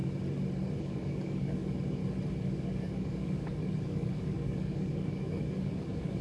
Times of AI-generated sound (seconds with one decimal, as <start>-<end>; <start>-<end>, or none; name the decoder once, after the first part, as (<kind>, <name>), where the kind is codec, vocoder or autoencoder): 0.8-2.0 (codec, DAC); 2.5-6.2